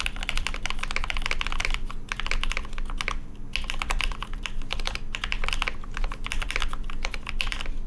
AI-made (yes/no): no